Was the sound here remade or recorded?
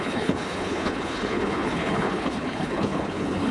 remade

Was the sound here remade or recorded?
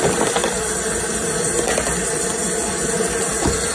recorded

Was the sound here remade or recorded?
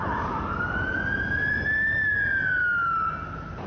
recorded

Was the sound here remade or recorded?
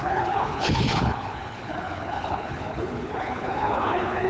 remade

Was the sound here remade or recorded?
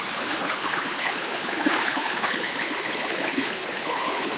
remade